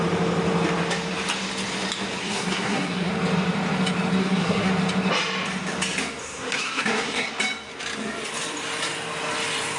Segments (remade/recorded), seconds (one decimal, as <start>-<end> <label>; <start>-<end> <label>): 0.0-2.2 recorded; 2.2-3.1 remade; 3.1-4.2 recorded; 4.2-4.7 remade; 4.7-6.2 recorded; 6.2-7.3 remade; 7.3-9.8 recorded